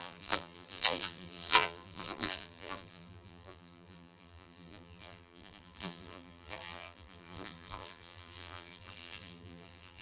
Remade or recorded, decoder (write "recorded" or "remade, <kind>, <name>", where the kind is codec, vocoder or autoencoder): remade, vocoder, BigVGAN v2